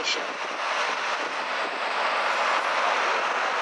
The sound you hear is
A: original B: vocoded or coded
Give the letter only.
A